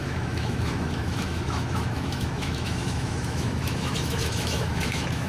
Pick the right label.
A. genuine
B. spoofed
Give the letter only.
B